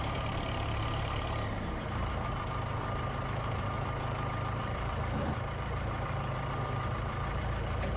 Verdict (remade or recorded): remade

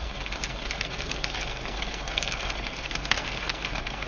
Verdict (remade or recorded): remade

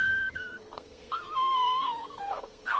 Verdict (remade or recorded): remade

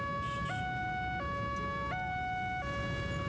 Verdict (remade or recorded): recorded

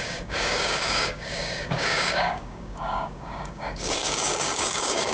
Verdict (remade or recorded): remade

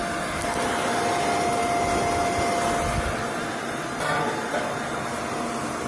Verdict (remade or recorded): recorded